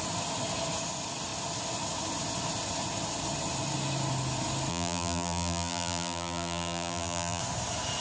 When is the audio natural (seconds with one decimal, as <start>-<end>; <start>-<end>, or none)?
0.0-4.7; 7.4-8.0